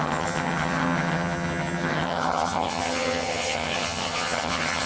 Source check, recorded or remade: remade